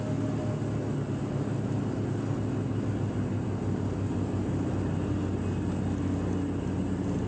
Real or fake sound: real